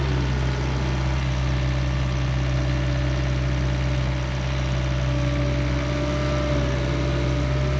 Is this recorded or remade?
recorded